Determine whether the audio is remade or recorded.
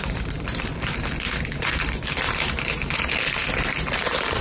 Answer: remade